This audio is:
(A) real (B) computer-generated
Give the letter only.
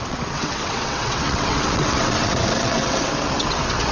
B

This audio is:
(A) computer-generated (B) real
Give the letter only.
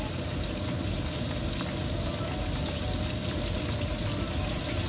B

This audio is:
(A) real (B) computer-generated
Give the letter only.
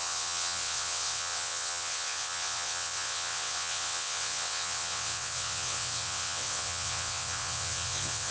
B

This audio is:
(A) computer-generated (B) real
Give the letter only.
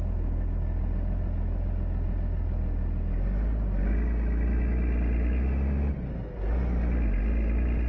B